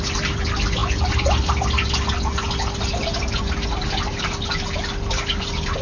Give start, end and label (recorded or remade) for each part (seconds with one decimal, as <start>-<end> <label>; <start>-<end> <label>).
0.0-5.8 recorded

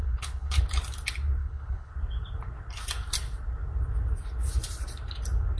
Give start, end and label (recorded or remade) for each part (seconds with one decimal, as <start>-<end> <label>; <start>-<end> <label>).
0.0-0.6 remade; 0.6-1.4 recorded; 1.4-1.9 remade; 1.9-5.6 recorded

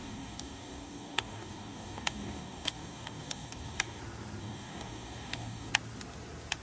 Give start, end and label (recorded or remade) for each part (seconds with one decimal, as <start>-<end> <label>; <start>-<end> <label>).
0.0-4.0 remade; 4.0-4.4 recorded; 4.4-5.7 remade; 5.7-6.6 recorded

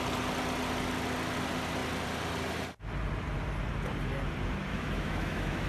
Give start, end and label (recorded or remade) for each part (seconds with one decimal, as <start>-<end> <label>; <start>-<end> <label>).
0.0-4.7 recorded; 4.7-5.7 remade

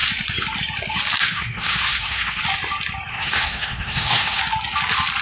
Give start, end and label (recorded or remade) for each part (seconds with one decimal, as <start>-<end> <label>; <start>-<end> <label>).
0.0-1.2 recorded; 1.2-2.4 remade; 2.4-3.1 recorded; 3.1-4.4 remade; 4.4-5.2 recorded

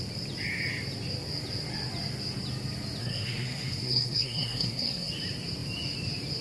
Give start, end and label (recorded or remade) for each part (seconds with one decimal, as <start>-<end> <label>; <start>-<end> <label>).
0.0-3.0 recorded; 3.0-5.1 remade; 5.1-6.4 recorded

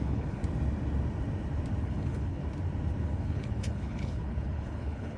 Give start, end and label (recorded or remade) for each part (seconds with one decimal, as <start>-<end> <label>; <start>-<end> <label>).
0.0-0.4 remade; 0.4-1.8 recorded; 1.8-2.4 remade; 2.4-3.0 recorded; 3.0-5.2 remade

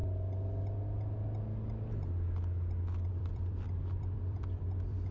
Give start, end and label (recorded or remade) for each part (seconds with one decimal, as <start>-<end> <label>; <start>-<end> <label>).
0.0-3.1 recorded; 3.1-5.1 remade